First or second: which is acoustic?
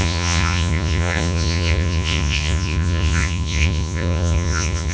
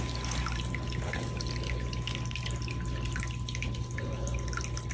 second